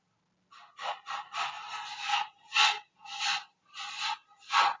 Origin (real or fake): real